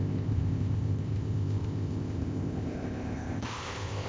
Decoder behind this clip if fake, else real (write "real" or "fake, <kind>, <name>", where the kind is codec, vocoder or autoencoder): fake, codec, ZipCodec